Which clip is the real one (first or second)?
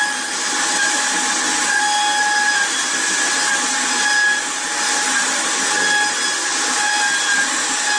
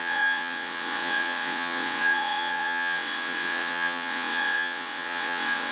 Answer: first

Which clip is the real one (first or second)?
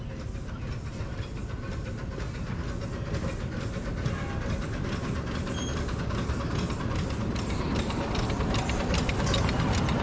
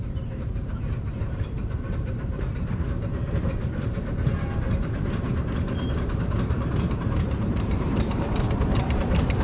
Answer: first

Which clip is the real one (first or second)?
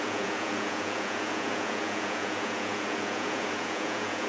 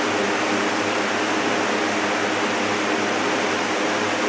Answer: second